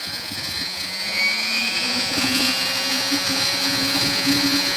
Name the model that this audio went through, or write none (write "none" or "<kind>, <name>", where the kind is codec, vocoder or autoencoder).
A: vocoder, Vocos